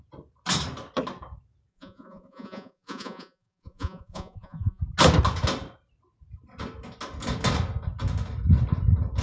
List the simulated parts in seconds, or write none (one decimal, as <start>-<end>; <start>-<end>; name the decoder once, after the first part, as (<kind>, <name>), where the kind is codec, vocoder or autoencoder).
1.7-4.8 (vocoder, Vocos)